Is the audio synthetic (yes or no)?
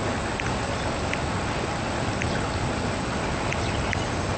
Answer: no